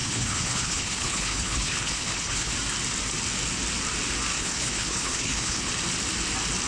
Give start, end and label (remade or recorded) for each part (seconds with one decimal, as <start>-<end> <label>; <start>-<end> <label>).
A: 0.0-2.5 remade; 2.5-4.3 recorded; 4.3-5.7 remade; 5.7-6.7 recorded